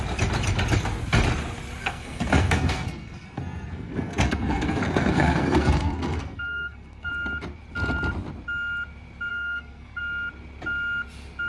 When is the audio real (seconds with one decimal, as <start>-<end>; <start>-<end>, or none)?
0.0-1.8; 7.1-9.3; 10.0-11.5